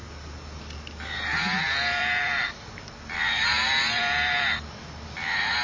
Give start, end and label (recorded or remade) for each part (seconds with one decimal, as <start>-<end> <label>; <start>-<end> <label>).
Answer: 0.0-5.6 remade